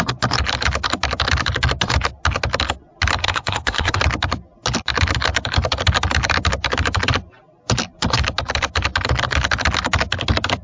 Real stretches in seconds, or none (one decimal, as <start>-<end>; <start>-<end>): 0.0-3.2; 4.0-10.6